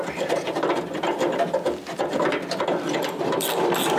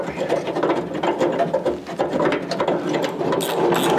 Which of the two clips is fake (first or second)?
first